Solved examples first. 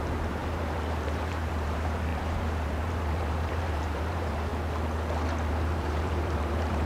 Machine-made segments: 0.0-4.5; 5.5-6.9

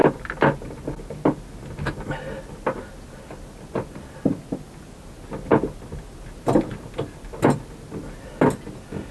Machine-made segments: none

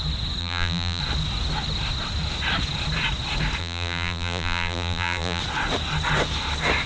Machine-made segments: 0.4-1.0; 3.6-5.4

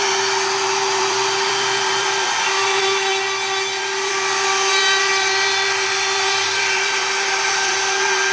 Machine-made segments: 0.0-3.1; 3.8-8.3

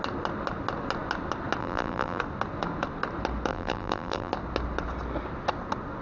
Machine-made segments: 1.6-2.2; 3.5-4.3

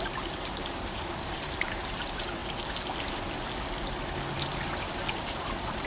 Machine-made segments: 0.0-2.4; 5.1-5.9

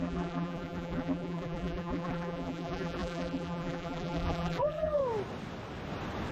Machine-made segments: 0.0-5.0

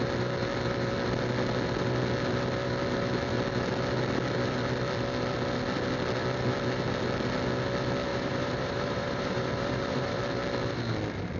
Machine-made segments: 8.1-10.2